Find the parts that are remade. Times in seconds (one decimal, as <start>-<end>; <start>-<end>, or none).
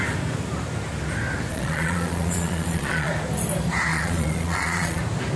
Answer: 1.5-3.1; 3.9-5.0